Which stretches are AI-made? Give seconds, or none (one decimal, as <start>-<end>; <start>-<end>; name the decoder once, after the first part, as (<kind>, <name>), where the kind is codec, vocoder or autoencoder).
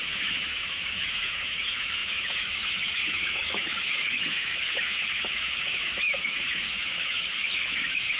0.0-8.2 (autoencoder, DAC-VAE)